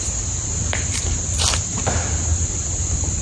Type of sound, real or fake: fake